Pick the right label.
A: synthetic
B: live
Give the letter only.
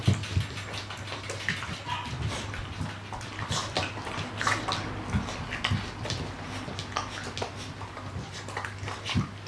B